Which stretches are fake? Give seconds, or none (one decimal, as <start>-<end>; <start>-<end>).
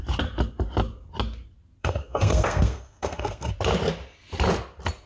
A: 1.8-3.5